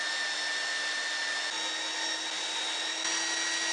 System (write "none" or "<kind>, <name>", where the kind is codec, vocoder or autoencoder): none